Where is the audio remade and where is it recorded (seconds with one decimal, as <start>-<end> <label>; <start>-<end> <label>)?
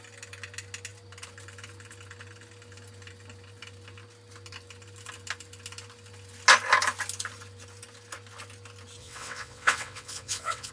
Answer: 0.0-9.0 recorded; 9.0-10.7 remade